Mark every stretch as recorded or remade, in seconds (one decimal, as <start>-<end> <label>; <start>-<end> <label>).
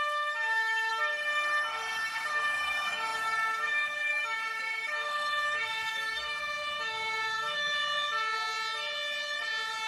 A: 0.0-0.9 remade; 0.9-2.1 recorded; 2.1-7.8 remade; 7.8-9.9 recorded